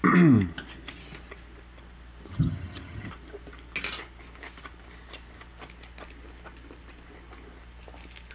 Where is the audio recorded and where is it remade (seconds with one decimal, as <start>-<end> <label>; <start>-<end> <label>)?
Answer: 0.0-2.3 recorded; 2.3-3.1 remade; 3.1-8.3 recorded